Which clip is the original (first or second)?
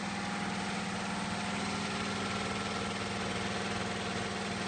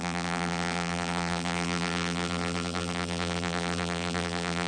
first